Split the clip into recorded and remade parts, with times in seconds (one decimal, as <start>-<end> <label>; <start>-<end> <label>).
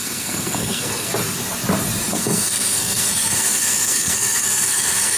0.0-1.1 remade; 1.1-2.1 recorded; 2.1-5.2 remade